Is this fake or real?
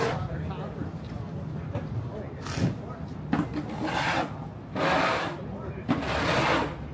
real